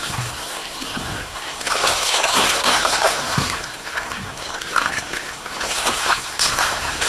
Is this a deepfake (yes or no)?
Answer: yes